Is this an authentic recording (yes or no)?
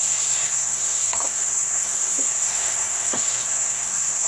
no